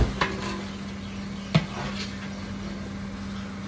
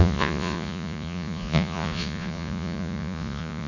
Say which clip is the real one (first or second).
first